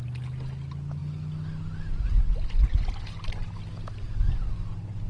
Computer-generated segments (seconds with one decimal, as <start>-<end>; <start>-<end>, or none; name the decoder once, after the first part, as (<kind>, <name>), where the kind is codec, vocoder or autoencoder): none